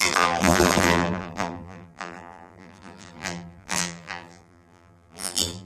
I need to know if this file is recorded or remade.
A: remade